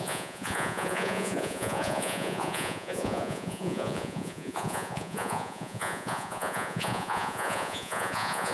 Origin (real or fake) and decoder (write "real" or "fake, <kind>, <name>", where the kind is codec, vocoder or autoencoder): fake, vocoder, Vocos